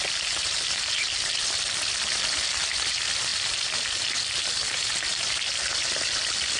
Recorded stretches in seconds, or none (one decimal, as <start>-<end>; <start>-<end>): 0.0-6.6